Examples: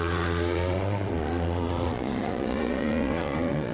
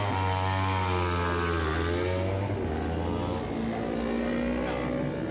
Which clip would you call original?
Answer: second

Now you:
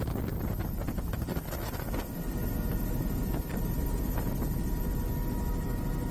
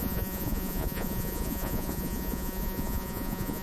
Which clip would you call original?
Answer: first